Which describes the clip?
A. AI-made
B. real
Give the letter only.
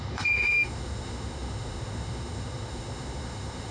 A